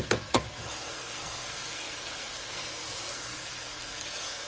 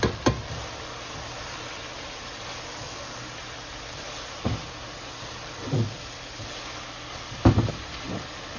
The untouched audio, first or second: second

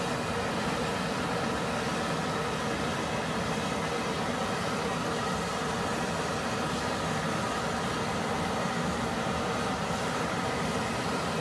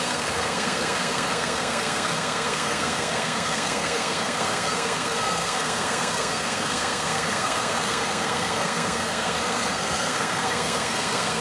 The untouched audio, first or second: first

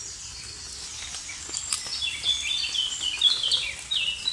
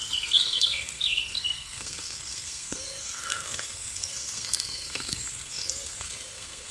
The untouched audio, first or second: first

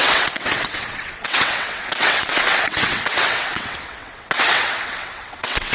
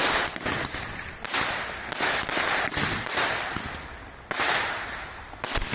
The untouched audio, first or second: second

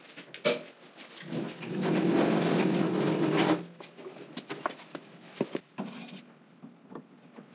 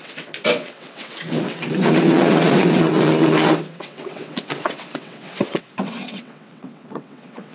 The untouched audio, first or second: first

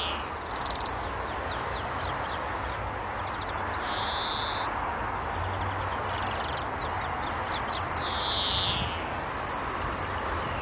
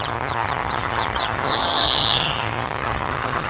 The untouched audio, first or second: first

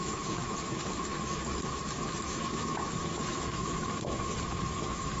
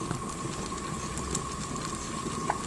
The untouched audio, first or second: second